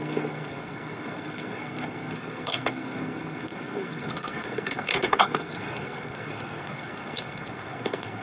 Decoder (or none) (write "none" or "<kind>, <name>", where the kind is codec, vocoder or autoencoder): codec, SNAC